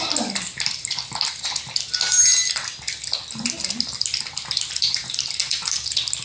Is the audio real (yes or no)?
yes